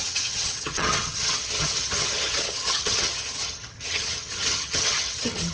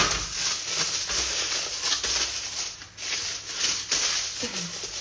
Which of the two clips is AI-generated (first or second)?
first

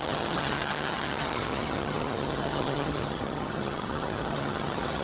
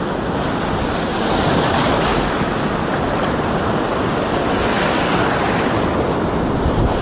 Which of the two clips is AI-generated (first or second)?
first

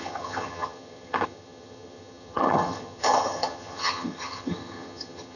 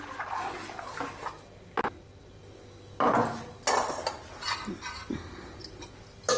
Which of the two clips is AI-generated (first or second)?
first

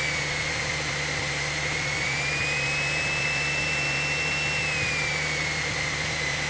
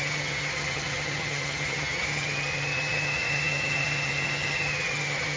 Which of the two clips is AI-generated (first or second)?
second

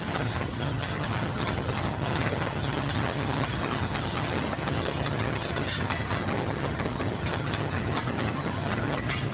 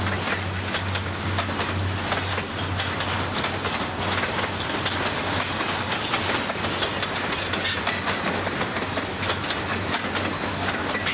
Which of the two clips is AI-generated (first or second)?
first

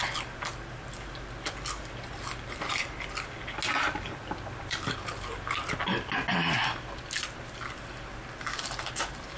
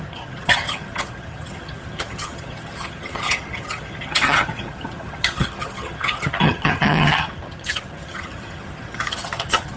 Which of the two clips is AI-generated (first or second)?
second